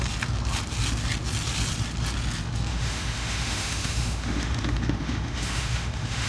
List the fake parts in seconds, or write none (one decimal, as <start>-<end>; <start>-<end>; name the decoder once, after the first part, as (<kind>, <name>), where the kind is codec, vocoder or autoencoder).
2.7-6.3 (autoencoder, DAC-VAE)

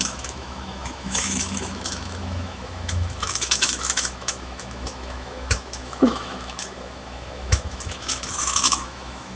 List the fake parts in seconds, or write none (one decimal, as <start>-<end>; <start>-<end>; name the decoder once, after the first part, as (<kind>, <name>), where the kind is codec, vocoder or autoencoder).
0.0-9.4 (autoencoder, DAC-VAE)

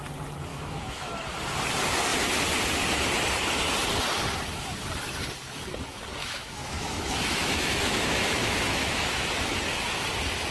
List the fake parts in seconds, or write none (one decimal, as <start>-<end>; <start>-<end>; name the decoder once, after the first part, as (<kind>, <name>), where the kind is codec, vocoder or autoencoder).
0.5-1.1 (autoencoder, DAC-VAE); 6.2-9.3

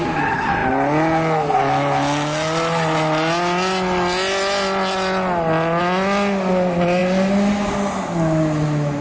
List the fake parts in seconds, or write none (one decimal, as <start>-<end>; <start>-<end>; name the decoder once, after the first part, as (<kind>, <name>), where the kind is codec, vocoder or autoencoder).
none

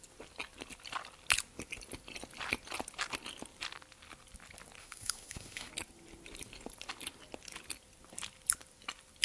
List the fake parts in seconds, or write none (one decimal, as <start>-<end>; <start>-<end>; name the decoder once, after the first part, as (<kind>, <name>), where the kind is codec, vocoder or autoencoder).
4.8-5.7 (autoencoder, DAC-VAE)